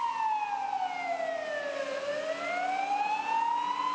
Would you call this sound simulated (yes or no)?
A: no